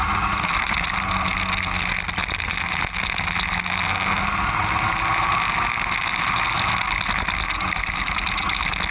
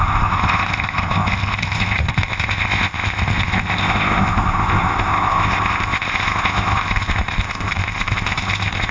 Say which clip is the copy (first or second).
second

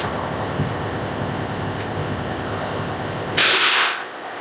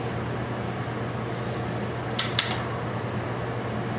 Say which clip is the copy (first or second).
first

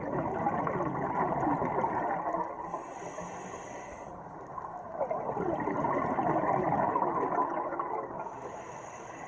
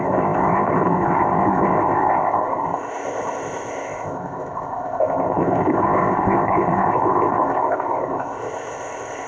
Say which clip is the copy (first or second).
second